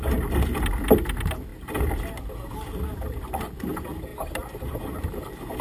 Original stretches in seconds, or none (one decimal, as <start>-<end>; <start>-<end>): 0.0-4.1; 4.8-5.6